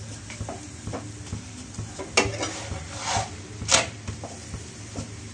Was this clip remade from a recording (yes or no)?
no